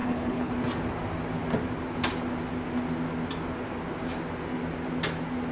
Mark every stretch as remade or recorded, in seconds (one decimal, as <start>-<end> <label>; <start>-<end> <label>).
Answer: 0.0-0.5 remade; 0.5-5.5 recorded